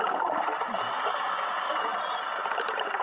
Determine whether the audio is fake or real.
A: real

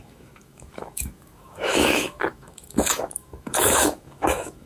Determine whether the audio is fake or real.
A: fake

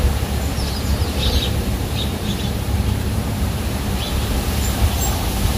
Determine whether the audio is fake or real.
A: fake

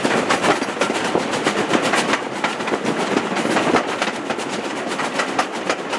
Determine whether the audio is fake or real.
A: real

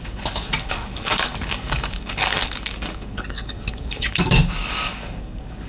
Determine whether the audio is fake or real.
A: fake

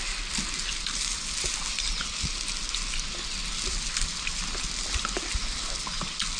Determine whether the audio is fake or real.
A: real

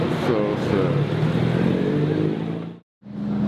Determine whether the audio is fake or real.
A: real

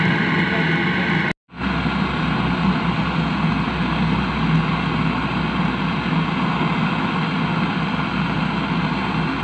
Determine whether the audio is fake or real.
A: real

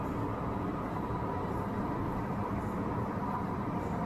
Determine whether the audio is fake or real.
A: fake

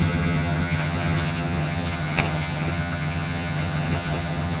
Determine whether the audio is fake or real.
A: fake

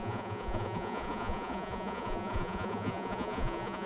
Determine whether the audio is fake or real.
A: fake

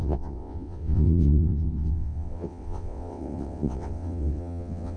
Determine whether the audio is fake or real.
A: fake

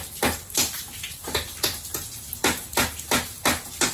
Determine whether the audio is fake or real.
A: real